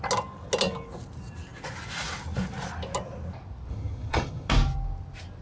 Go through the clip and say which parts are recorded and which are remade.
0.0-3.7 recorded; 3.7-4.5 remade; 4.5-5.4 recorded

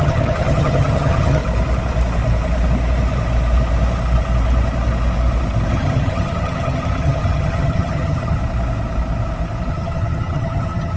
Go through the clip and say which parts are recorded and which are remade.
0.0-1.4 remade; 1.4-5.7 recorded; 5.7-8.4 remade; 8.4-9.7 recorded; 9.7-11.0 remade

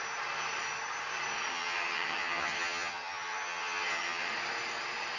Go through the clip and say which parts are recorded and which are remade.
0.0-1.5 recorded; 1.5-4.3 remade; 4.3-5.2 recorded

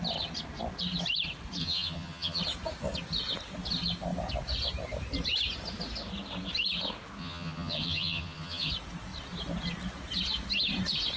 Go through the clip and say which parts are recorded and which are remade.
0.0-1.6 recorded; 1.6-2.4 remade; 2.4-7.2 recorded; 7.2-8.7 remade; 8.7-11.2 recorded

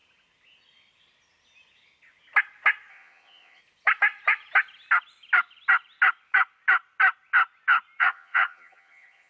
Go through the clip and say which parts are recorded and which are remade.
0.0-2.9 recorded; 2.9-3.6 remade; 3.6-8.0 recorded; 8.0-9.3 remade

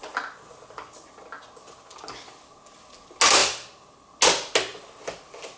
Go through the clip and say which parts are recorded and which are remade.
0.0-5.6 recorded

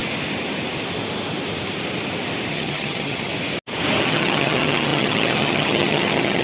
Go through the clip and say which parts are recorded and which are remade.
0.0-2.5 recorded; 2.5-3.3 remade; 3.3-4.0 recorded; 4.0-6.4 remade

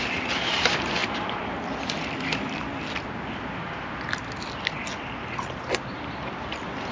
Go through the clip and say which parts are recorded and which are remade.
0.0-6.9 recorded